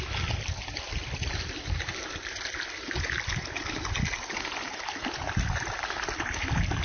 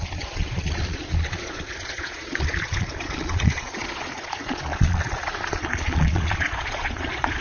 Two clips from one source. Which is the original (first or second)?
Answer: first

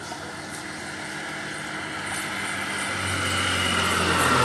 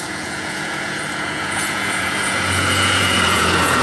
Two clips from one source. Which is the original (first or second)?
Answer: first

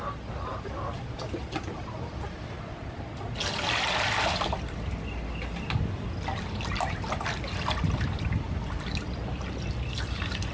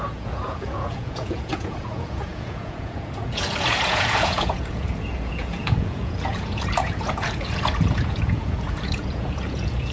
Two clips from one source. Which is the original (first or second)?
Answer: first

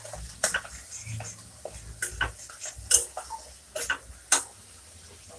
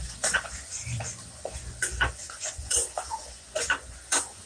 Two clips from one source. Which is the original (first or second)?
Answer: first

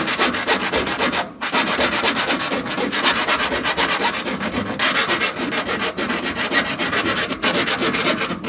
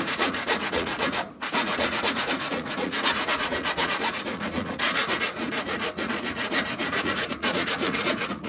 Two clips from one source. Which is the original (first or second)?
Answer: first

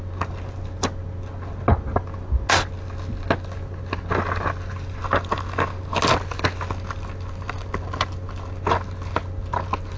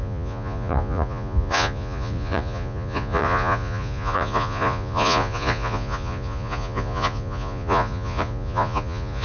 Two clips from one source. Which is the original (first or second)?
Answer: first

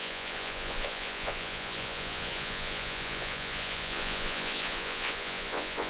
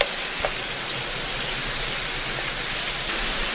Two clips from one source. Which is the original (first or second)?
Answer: second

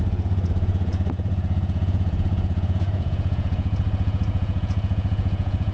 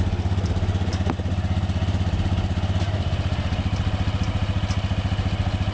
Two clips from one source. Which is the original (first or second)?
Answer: second